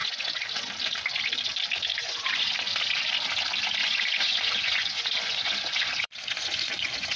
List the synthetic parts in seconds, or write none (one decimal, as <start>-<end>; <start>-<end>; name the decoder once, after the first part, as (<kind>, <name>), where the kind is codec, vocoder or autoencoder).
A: 0.0-0.7 (vocoder, Vocos); 1.9-2.5; 3.8-7.2